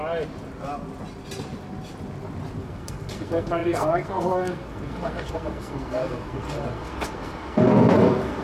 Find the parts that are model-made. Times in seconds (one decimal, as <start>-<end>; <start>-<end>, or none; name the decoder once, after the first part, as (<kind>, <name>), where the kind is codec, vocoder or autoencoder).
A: 2.6-8.4 (codec, SNAC)